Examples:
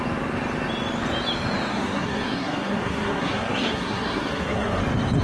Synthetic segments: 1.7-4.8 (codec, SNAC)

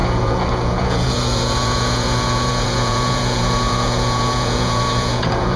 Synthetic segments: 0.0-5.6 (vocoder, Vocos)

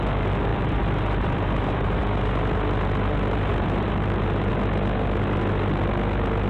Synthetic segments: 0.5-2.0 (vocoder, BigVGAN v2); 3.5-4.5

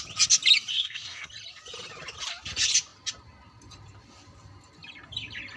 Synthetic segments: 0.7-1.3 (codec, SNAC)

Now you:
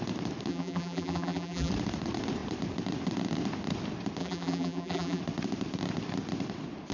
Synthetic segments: 0.5-1.7 (vocoder, BigVGAN v2); 4.2-5.2

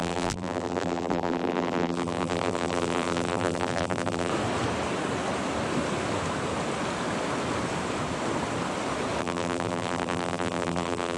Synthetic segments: 0.0-4.3 (vocoder, BigVGAN v2); 9.2-11.2

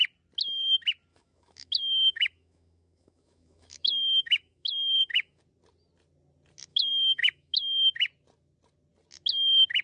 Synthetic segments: 1.1-5.4 (autoencoder, DAC-VAE); 6.7-7.8